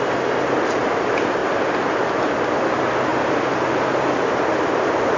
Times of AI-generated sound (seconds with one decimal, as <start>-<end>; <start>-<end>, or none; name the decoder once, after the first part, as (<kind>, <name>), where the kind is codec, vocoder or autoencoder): none